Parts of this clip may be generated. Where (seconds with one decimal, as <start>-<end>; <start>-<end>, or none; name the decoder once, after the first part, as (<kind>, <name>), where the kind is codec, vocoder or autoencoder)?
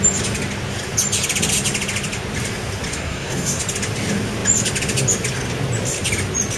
2.9-3.6 (codec, SNAC)